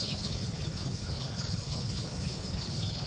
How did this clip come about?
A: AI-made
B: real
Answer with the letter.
A